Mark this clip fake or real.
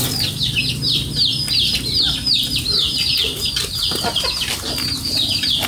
real